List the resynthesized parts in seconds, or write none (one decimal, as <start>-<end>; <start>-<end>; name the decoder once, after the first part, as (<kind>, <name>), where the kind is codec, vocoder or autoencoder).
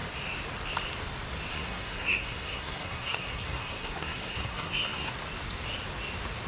1.5-5.1 (codec, SNAC)